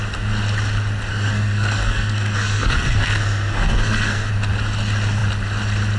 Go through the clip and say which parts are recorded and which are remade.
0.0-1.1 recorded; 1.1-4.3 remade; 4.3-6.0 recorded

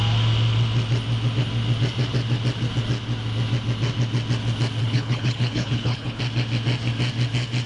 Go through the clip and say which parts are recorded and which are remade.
0.0-4.8 recorded; 4.8-6.2 remade; 6.2-7.7 recorded

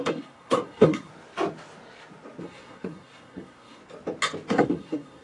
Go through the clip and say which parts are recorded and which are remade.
0.0-1.1 remade; 1.1-2.4 recorded; 2.4-3.8 remade; 3.8-4.5 recorded; 4.5-5.2 remade

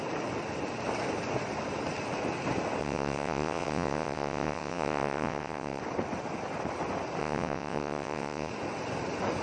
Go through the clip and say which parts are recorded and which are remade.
0.0-2.8 recorded; 2.8-5.8 remade; 5.8-7.2 recorded; 7.2-8.5 remade; 8.5-9.4 recorded

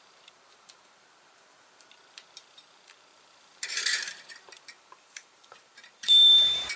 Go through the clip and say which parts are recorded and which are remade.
0.0-6.8 remade

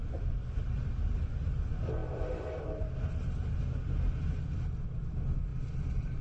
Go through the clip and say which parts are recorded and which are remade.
0.0-2.0 remade; 2.0-4.1 recorded; 4.1-6.2 remade